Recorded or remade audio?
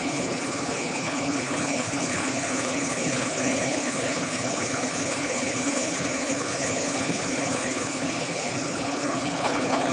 remade